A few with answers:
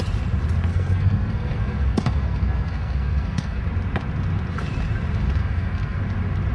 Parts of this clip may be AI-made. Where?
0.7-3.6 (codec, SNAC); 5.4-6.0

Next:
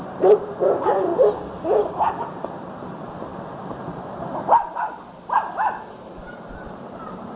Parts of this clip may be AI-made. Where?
0.0-1.1 (vocoder, BigVGAN v2); 2.1-4.8; 6.1-7.4